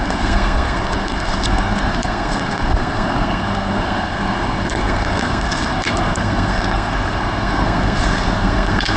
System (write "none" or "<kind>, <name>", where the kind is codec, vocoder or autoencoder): codec, SNAC